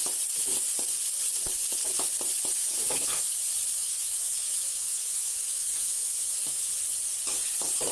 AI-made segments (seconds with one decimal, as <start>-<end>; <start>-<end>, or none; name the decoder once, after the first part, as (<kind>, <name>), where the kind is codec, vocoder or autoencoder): 2.6-3.3 (autoencoder, DAC-VAE); 3.8-6.7